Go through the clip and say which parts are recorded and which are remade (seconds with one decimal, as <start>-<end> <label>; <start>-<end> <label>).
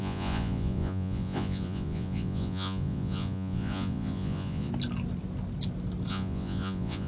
0.0-4.7 remade; 4.7-6.1 recorded; 6.1-7.1 remade